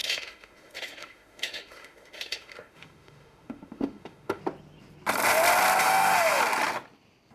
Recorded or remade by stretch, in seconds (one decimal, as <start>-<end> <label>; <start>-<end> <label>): 0.0-4.4 remade; 4.4-5.8 recorded; 5.8-6.4 remade; 6.4-7.3 recorded